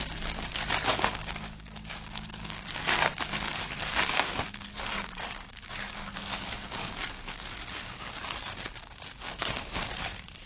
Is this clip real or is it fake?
fake